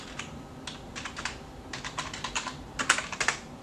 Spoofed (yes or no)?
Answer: no